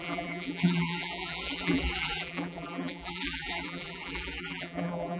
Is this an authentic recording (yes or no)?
no